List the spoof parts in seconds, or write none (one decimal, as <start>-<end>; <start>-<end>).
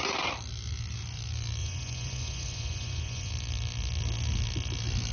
1.6-3.3